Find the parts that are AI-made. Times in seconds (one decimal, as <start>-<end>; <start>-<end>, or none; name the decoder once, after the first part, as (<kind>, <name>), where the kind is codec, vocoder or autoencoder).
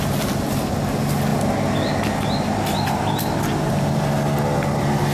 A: none